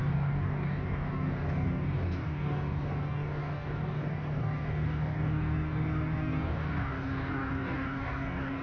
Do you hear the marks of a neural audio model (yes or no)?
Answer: yes